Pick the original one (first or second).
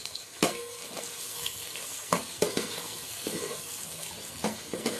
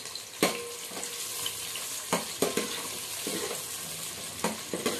second